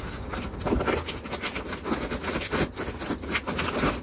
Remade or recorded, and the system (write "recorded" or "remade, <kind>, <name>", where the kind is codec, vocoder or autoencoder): recorded